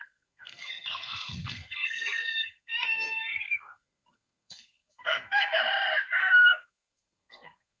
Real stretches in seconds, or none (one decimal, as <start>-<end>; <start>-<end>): 5.6-6.2